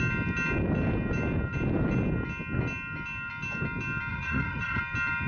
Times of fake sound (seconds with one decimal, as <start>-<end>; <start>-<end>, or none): 4.1-4.8